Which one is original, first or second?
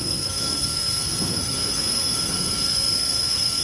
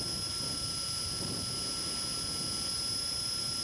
second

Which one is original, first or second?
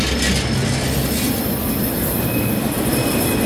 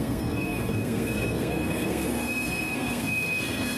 first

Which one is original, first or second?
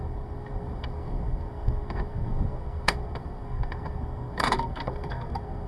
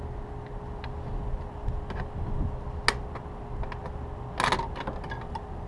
second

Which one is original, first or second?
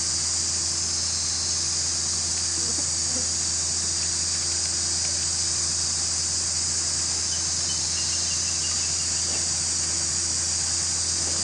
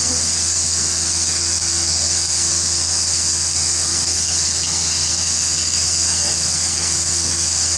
first